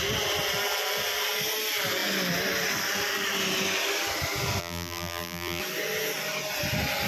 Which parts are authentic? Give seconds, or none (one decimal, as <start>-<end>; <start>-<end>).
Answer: 0.0-4.6; 5.6-7.1